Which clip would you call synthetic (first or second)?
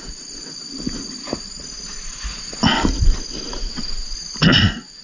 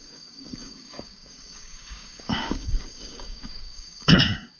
second